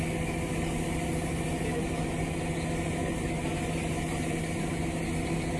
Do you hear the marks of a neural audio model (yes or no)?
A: no